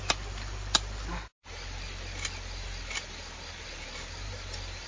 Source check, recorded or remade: recorded